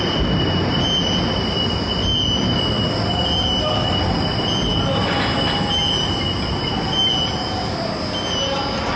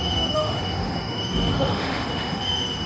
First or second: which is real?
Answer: first